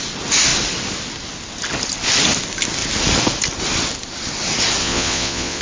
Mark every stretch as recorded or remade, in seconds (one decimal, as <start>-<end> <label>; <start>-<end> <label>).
0.0-4.8 recorded; 4.8-5.6 remade